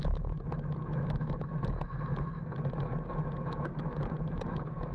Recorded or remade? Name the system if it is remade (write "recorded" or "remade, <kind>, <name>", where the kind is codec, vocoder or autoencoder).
remade, autoencoder, DAC-VAE